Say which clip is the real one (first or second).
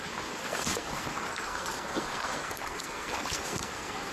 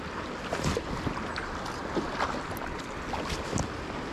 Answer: second